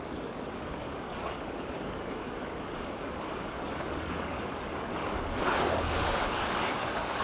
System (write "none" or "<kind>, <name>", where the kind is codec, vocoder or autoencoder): codec, DAC